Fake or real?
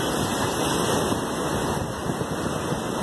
real